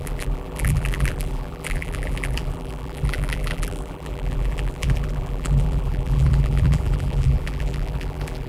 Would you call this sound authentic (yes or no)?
no